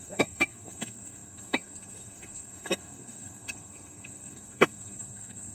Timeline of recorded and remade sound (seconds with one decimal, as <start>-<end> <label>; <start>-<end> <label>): 0.0-5.5 remade